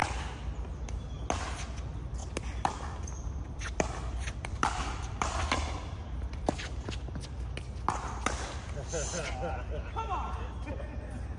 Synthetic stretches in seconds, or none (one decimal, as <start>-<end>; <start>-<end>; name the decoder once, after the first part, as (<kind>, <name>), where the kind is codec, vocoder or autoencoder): 2.2-6.9 (vocoder, BigVGAN v2)